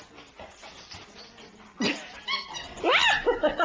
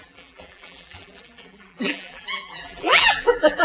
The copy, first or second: second